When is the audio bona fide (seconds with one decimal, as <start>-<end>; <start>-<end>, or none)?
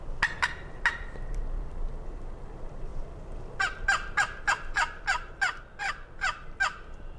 0.0-2.9; 5.6-7.2